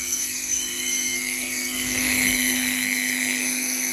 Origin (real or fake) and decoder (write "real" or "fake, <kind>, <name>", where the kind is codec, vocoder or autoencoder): fake, codec, SNAC